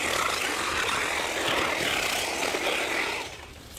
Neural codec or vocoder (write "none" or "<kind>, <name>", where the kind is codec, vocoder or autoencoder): none